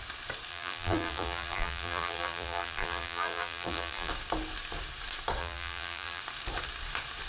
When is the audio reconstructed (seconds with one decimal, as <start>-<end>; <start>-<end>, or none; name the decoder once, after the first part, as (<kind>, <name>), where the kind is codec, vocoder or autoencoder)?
0.5-4.1 (vocoder, BigVGAN v2); 5.4-6.2